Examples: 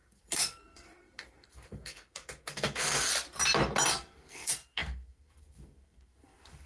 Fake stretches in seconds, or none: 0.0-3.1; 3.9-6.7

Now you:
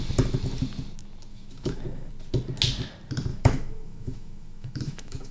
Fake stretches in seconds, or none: 1.3-2.1; 3.3-5.3

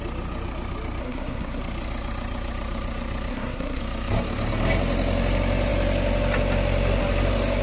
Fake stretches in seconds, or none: 1.0-1.6; 3.3-3.8

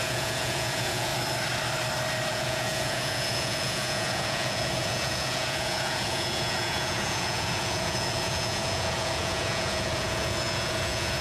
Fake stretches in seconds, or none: 0.0-1.1; 2.3-11.2

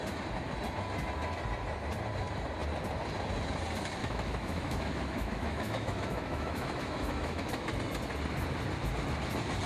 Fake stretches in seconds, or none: 4.0-7.8

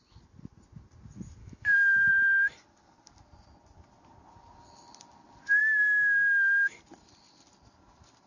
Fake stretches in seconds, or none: 1.4-2.1; 5.6-6.8

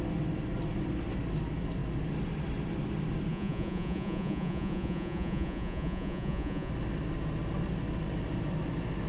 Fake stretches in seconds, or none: 3.3-6.7